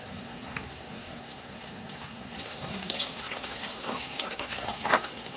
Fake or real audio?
fake